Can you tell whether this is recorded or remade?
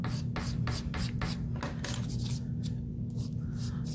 recorded